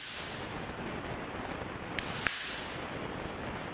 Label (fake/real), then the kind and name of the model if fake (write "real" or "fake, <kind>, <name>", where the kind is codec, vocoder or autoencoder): real